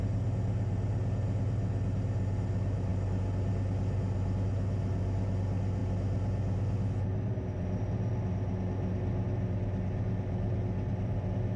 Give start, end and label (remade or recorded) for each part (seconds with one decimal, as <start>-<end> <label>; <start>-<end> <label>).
0.0-11.6 recorded